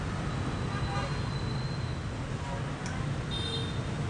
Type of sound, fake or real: real